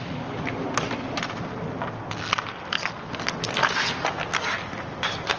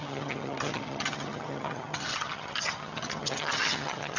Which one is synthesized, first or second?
second